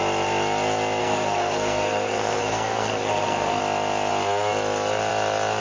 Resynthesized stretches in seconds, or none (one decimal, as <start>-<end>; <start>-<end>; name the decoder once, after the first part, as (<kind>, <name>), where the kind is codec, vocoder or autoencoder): 1.0-3.6 (codec, SNAC)

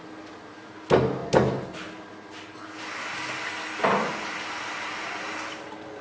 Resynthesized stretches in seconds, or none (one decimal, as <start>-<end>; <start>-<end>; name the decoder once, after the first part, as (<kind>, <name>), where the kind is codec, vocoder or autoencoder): none

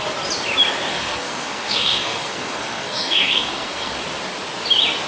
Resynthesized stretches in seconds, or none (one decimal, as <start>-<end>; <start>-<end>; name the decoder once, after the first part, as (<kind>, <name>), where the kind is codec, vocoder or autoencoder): 0.9-4.0 (codec, SNAC)